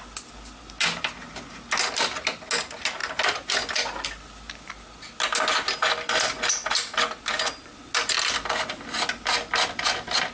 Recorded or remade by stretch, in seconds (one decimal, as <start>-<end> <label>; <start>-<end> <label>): 0.0-10.3 recorded

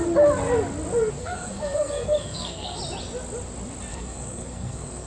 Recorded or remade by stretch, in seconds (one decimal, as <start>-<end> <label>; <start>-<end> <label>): 0.0-1.2 recorded; 1.2-2.8 remade; 2.8-3.9 recorded; 3.9-5.1 remade

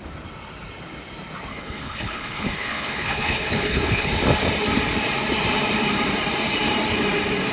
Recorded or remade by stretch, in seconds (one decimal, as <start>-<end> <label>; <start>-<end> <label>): 0.0-1.5 recorded; 1.5-4.1 remade; 4.1-7.5 recorded

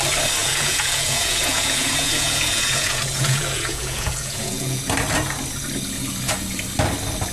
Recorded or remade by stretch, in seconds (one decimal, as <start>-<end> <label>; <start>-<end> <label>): 0.0-0.4 recorded; 0.4-4.8 remade; 4.8-7.3 recorded

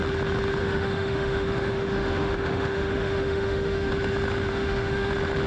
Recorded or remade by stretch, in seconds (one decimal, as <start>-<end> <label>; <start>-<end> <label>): 0.0-0.6 recorded; 0.6-3.9 remade; 3.9-4.5 recorded; 4.5-5.1 remade; 5.1-5.5 recorded

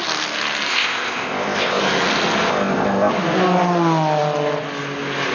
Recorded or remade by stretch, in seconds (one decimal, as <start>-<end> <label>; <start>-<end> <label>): 0.0-0.7 recorded; 0.7-1.8 remade; 1.8-2.5 recorded; 2.5-3.1 remade; 3.1-5.3 recorded

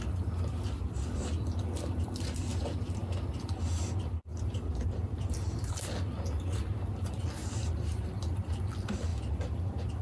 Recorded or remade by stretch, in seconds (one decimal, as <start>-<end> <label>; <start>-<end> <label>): 0.0-4.3 recorded; 4.3-5.7 remade; 5.7-7.4 recorded; 7.4-8.5 remade; 8.5-10.0 recorded

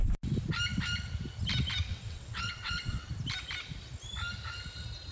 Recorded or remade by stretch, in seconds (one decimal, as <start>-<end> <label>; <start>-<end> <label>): 0.0-1.9 recorded; 1.9-3.1 remade; 3.1-5.1 recorded